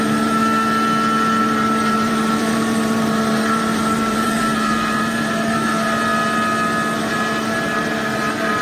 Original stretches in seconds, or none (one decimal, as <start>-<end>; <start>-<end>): 0.4-1.4; 6.1-7.0